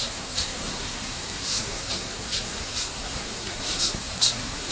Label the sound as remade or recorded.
remade